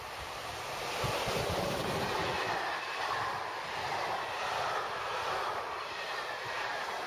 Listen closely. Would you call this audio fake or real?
real